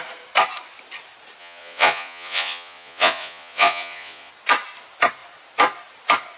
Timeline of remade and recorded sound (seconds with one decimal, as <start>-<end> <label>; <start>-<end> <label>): 0.0-1.4 recorded; 1.4-4.3 remade; 4.3-6.4 recorded